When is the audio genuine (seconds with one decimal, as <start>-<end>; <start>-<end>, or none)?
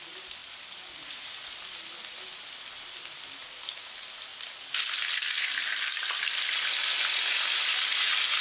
0.0-8.4